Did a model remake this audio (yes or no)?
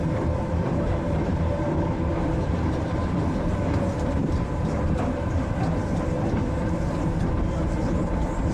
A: yes